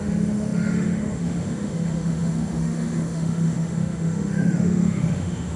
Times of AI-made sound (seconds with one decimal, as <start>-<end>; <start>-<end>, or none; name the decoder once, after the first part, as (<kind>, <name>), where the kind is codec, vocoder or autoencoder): 0.0-5.6 (autoencoder, DAC-VAE)

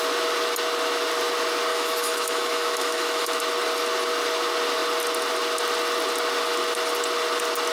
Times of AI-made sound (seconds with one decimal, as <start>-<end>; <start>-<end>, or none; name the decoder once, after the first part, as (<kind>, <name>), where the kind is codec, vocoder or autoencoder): 1.7-3.4 (autoencoder, DAC-VAE)

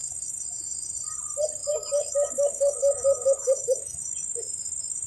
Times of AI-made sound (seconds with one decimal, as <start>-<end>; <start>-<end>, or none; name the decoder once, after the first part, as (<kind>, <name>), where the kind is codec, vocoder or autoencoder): 0.0-1.0 (autoencoder, DAC-VAE); 1.6-5.1

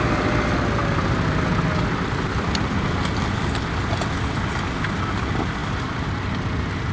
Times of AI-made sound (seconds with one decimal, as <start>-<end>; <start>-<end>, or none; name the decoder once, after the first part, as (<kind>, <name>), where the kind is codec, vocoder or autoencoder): none

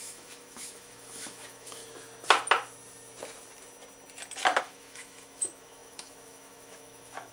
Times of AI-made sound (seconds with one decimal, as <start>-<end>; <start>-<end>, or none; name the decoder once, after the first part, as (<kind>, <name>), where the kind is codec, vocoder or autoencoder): 0.0-1.8 (autoencoder, DAC-VAE); 4.6-7.3

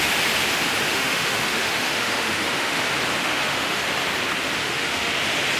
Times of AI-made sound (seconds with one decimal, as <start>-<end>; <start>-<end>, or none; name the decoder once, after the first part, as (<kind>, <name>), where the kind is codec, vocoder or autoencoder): 0.9-2.8 (autoencoder, DAC-VAE); 3.2-3.8; 4.6-5.1

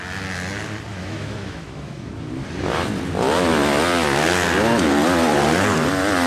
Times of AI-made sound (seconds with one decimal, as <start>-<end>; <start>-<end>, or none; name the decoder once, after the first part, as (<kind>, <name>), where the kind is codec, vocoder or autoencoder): 0.9-2.1 (autoencoder, DAC-VAE)

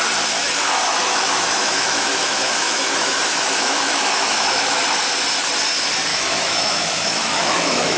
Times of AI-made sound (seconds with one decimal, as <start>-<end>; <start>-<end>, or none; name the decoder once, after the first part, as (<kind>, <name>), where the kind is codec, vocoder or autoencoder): 1.0-4.8 (autoencoder, DAC-VAE); 6.1-8.0